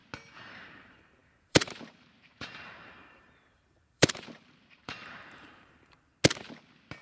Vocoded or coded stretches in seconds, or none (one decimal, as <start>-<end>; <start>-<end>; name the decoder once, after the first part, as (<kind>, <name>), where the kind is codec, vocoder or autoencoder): 0.5-6.1 (vocoder, BigVGAN v2)